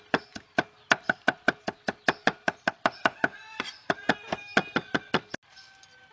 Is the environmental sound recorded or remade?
recorded